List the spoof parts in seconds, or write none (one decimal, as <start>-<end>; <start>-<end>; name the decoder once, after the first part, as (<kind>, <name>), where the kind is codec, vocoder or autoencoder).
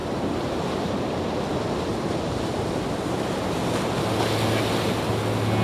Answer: 0.0-1.4 (vocoder, BigVGAN v2); 1.9-2.7